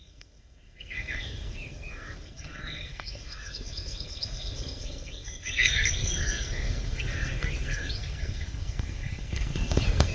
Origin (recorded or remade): remade